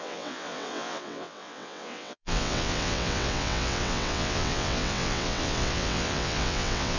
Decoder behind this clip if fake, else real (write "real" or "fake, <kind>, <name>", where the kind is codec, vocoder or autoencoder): fake, vocoder, WaveNeXt